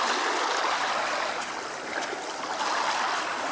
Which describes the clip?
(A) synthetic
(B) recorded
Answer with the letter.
B